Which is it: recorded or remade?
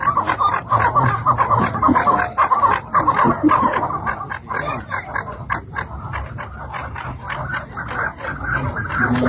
recorded